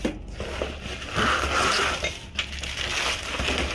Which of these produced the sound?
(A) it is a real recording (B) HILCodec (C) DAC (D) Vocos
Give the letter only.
A